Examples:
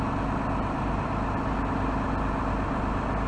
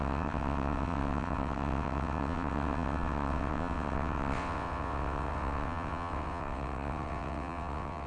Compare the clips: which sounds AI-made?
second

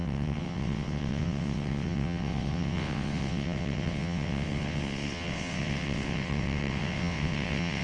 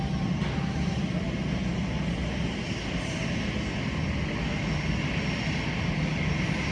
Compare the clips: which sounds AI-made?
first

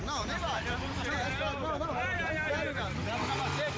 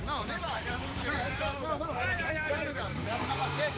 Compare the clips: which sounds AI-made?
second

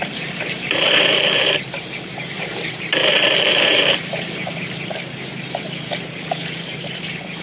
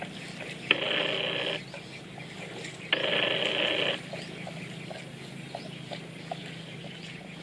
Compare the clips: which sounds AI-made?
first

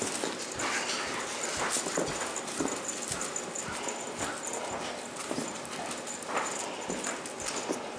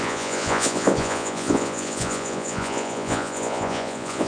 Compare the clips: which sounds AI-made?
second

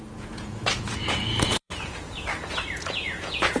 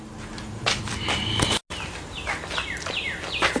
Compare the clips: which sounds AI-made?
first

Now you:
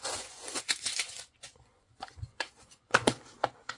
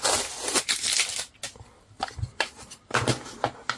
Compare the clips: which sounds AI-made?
first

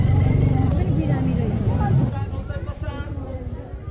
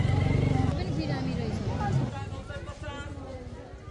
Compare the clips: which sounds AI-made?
first